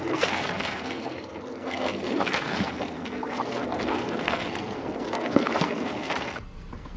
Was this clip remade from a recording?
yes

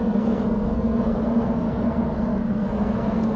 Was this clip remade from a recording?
yes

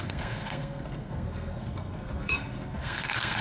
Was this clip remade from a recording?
yes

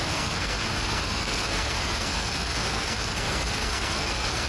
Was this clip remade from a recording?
yes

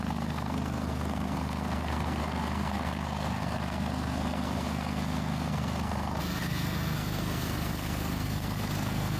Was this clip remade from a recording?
yes